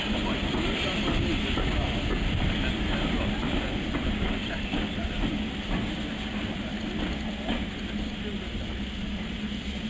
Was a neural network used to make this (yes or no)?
no